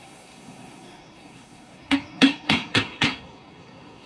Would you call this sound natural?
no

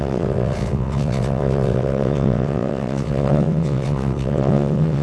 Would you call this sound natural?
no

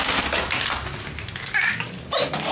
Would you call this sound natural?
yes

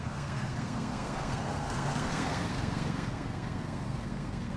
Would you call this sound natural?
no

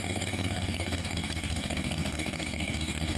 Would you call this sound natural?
no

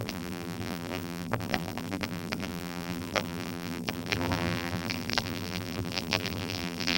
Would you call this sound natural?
no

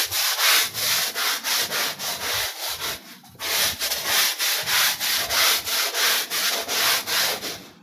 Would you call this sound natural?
yes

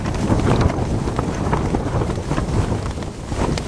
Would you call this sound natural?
yes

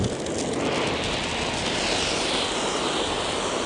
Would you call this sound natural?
yes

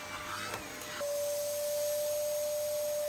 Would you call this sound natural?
yes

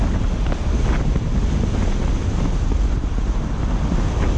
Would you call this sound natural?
yes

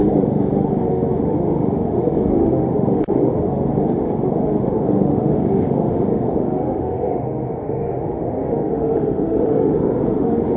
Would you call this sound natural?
no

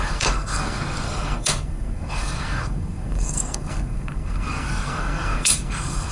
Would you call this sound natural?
no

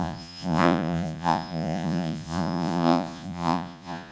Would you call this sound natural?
no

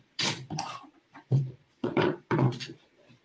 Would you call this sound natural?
no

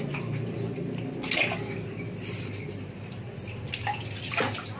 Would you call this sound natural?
yes